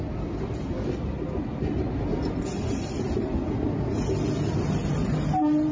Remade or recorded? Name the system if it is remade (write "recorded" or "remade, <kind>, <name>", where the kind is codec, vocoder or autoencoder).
recorded